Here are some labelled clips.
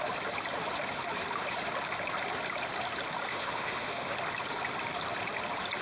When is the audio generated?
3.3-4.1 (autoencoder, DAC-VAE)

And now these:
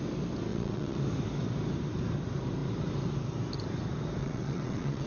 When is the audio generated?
0.5-1.0 (vocoder, WaveNeXt); 4.2-5.1

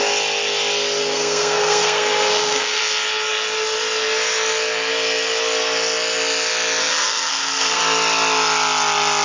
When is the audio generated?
1.0-2.8 (codec, SNAC); 6.8-7.8

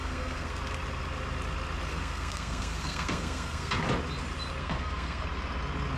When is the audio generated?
0.0-0.6 (codec, SNAC); 1.9-3.8; 4.6-5.2